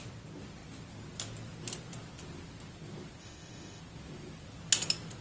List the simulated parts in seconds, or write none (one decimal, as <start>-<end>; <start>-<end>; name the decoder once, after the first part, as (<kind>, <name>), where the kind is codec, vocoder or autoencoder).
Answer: 3.2-3.8 (autoencoder, DAC-VAE)